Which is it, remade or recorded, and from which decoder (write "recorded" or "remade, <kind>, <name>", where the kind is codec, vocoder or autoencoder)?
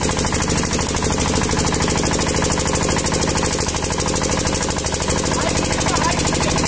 recorded